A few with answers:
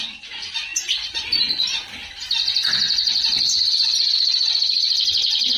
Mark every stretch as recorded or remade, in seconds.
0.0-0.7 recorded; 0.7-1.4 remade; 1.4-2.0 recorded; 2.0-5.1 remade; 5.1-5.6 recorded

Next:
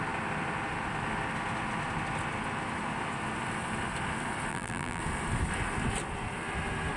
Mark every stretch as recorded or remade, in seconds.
0.0-4.5 recorded; 4.5-5.0 remade; 5.0-7.0 recorded

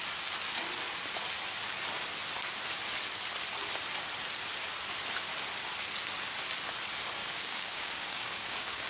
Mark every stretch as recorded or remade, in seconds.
0.0-7.2 recorded; 7.2-8.9 remade

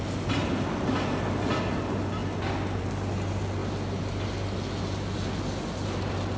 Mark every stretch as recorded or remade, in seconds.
0.0-6.4 recorded

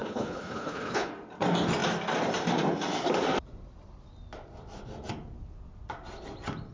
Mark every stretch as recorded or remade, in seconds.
0.0-1.1 remade; 1.1-6.7 recorded